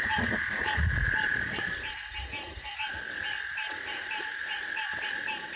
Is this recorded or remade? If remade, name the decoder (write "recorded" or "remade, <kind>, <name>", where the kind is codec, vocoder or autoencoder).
remade, vocoder, Vocos